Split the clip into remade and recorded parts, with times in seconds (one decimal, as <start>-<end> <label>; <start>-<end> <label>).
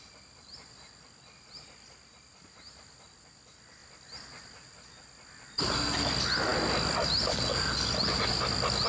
0.0-8.9 recorded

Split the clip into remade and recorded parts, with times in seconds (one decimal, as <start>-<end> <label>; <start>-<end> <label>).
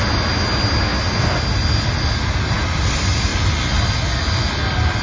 0.0-3.3 recorded; 3.3-3.9 remade; 3.9-5.0 recorded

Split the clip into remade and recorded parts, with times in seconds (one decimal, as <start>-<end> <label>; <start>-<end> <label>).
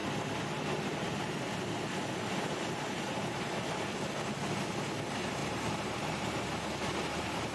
0.0-5.4 recorded; 5.4-6.4 remade; 6.4-7.5 recorded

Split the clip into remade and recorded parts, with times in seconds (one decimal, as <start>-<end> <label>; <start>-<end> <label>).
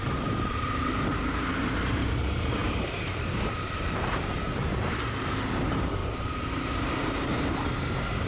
0.0-4.7 remade; 4.7-5.6 recorded; 5.6-8.3 remade